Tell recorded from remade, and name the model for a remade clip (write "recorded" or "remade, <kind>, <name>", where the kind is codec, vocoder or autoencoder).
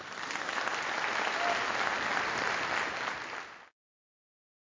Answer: recorded